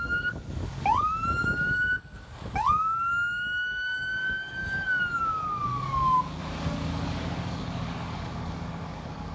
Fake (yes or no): yes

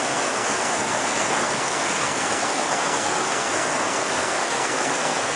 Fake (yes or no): yes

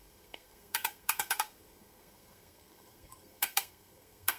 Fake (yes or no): yes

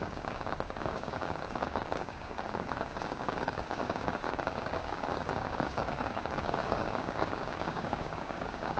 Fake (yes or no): yes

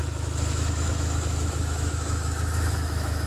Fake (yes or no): yes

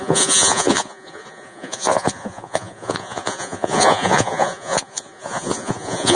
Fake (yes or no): yes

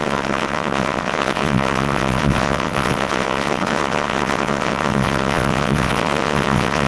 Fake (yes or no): yes